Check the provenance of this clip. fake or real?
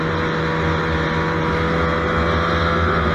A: real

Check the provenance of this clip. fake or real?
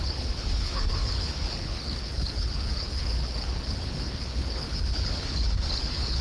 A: fake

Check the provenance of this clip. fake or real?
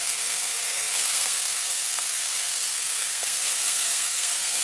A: fake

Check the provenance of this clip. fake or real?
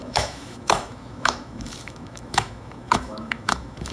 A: fake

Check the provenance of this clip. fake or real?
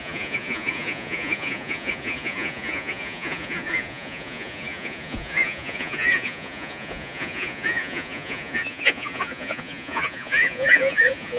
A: fake